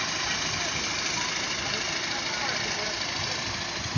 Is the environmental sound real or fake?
real